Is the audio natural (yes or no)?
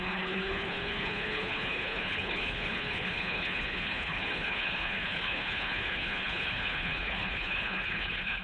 no